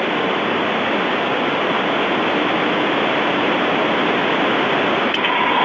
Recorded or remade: recorded